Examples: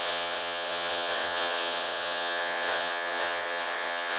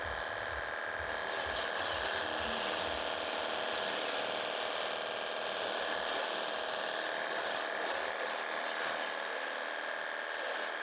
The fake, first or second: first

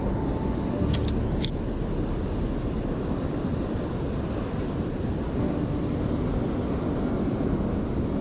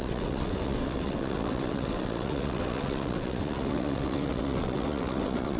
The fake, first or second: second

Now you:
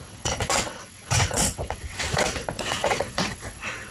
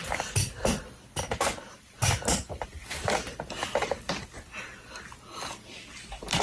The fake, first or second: first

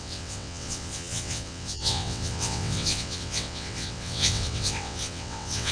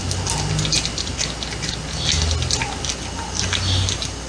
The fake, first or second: first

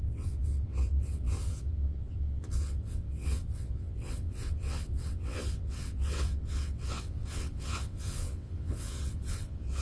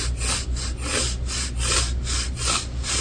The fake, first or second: first